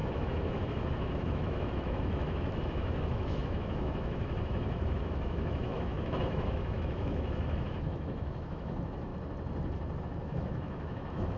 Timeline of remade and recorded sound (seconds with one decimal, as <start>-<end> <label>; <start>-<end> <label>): 0.0-9.1 remade; 9.1-10.0 recorded; 10.0-11.4 remade